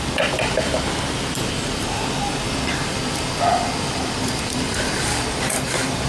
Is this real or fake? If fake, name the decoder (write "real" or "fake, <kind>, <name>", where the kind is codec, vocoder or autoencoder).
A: fake, vocoder, BigVGAN v2